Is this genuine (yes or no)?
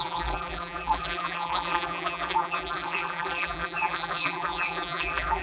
no